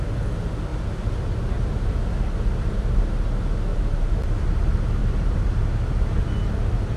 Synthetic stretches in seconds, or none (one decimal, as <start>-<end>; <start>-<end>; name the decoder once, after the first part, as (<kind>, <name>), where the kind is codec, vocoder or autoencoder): 3.7-4.6 (vocoder, BigVGAN v2); 5.0-5.5